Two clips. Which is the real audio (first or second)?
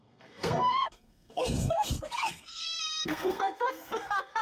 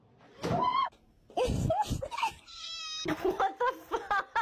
second